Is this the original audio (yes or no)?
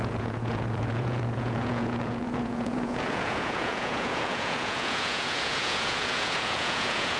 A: no